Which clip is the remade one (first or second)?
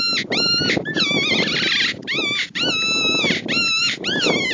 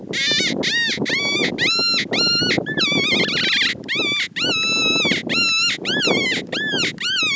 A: first